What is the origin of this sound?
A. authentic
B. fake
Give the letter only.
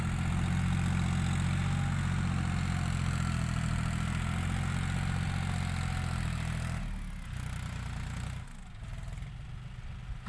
A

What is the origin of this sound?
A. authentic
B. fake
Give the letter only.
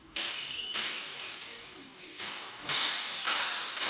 B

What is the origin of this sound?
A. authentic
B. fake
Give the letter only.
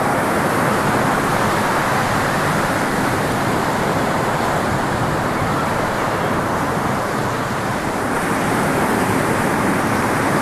B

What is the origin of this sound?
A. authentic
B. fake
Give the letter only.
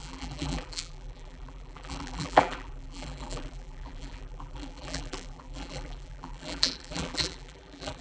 B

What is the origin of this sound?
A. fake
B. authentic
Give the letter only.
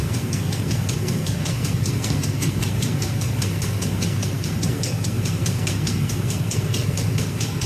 A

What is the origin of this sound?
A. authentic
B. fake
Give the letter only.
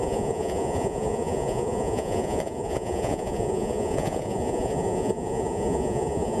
B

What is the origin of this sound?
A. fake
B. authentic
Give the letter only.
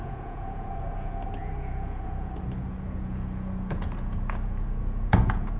A